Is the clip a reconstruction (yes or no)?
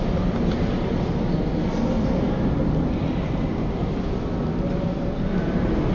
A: no